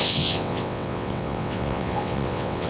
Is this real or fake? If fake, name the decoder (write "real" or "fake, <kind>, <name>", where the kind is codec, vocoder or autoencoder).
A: fake, vocoder, WaveNeXt